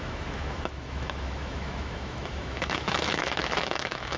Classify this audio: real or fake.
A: fake